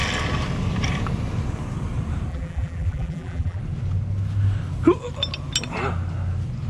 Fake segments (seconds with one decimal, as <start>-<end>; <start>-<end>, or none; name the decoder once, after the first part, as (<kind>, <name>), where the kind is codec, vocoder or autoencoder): 2.3-3.6 (vocoder, BigVGAN v2)